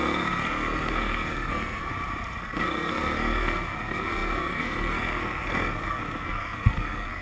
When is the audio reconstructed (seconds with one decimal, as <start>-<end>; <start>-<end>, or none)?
0.0-1.9; 2.4-7.2